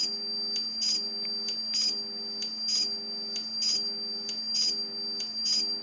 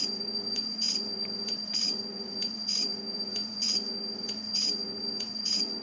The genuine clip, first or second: first